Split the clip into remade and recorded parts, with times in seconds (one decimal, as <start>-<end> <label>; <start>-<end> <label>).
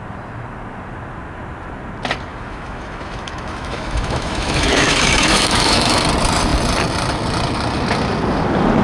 0.0-2.3 recorded; 2.3-6.0 remade; 6.0-8.8 recorded